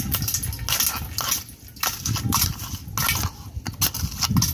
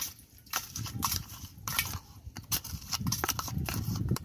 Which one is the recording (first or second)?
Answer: first